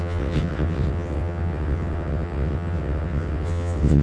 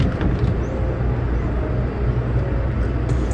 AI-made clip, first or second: first